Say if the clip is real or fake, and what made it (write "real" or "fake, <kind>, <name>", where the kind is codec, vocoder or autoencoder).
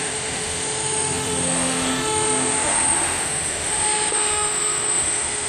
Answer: fake, autoencoder, DAC-VAE